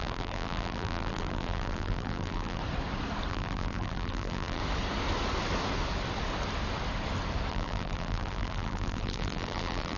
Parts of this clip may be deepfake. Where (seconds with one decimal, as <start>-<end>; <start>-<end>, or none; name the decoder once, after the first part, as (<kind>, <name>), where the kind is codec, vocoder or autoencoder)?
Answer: 0.0-2.6 (vocoder, BigVGAN v2); 3.3-4.6; 7.5-10.0